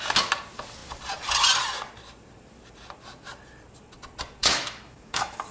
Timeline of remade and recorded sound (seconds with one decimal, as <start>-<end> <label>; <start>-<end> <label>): 0.0-4.4 recorded; 4.4-5.5 remade